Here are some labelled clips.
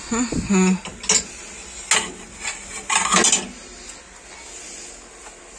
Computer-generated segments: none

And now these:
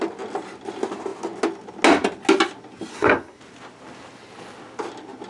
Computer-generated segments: 2.9-3.4 (codec, SNAC)

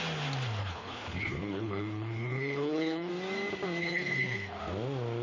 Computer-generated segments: 0.6-3.1 (codec, HILCodec); 3.8-4.6